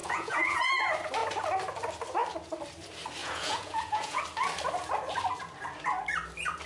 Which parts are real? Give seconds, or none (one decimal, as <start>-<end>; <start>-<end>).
0.7-3.2; 4.2-6.7